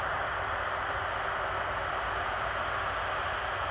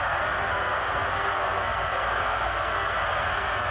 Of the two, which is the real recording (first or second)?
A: first